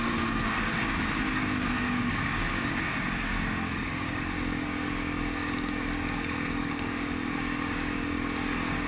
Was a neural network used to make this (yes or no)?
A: yes